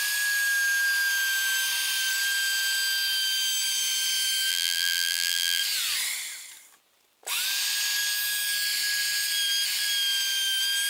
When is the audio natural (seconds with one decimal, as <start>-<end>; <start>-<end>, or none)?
0.0-4.5; 5.6-10.9